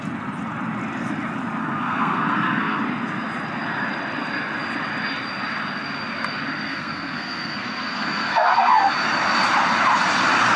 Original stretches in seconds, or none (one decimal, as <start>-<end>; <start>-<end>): 0.0-1.6; 2.8-6.7; 8.9-10.6